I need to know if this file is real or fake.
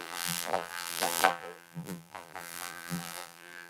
fake